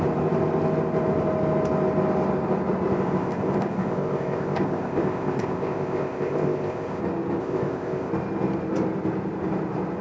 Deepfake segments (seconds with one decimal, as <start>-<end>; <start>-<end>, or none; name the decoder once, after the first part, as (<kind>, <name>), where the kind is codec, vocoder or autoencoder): 2.9-7.0 (codec, ZipCodec); 7.4-8.1